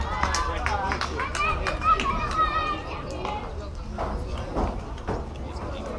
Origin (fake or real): real